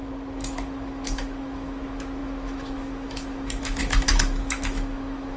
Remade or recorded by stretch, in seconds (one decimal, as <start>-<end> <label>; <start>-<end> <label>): 0.0-5.4 remade